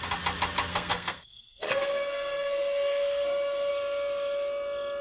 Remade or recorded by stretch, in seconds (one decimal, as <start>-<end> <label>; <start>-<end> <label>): 0.0-0.7 recorded; 0.7-3.7 remade; 3.7-5.0 recorded

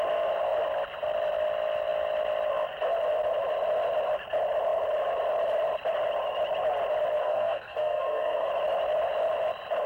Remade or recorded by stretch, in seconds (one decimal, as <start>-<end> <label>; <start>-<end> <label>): 0.0-7.2 recorded; 7.2-8.5 remade; 8.5-9.9 recorded